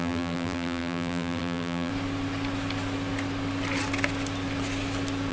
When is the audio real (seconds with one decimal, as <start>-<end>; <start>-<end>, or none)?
1.9-5.3